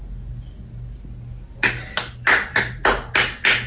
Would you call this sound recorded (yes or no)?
yes